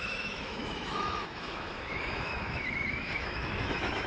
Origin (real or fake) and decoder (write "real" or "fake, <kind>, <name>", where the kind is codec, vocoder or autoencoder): fake, autoencoder, DAC-VAE